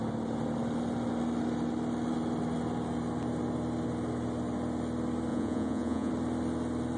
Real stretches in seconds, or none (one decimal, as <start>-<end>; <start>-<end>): 0.0-5.3; 6.1-7.0